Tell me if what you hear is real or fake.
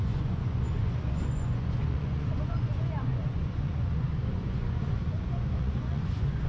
fake